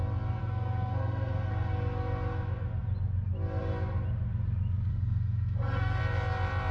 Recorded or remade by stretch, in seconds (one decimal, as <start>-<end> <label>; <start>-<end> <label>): 0.0-0.4 recorded; 0.4-1.5 remade; 1.5-4.9 recorded; 4.9-6.0 remade; 6.0-6.7 recorded

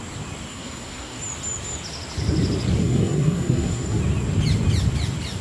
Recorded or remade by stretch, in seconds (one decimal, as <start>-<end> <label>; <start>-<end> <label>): 0.0-0.5 recorded; 0.5-1.2 remade; 1.2-2.8 recorded; 2.8-4.0 remade; 4.0-5.4 recorded

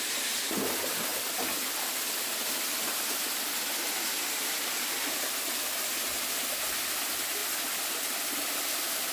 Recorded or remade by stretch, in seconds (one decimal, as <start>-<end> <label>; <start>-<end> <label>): 0.0-9.1 recorded